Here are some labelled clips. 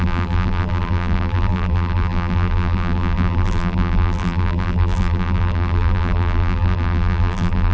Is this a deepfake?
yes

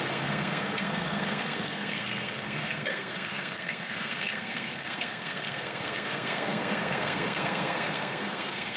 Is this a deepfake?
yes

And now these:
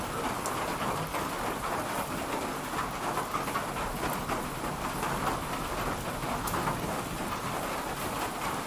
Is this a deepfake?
no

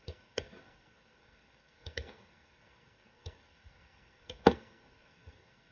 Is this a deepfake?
yes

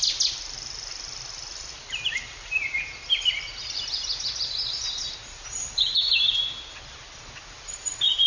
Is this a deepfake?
no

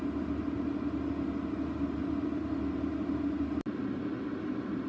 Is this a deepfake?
no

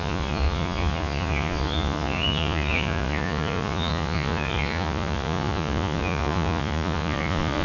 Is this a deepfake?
yes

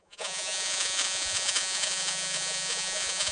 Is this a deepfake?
yes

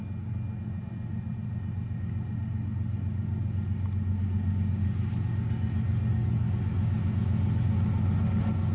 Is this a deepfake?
no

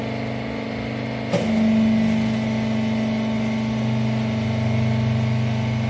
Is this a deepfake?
no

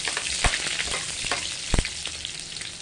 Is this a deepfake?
no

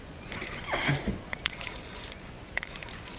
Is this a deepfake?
yes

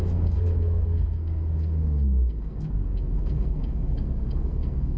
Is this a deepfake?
yes